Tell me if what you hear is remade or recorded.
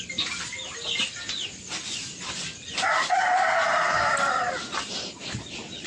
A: remade